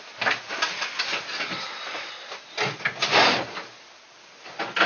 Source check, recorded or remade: recorded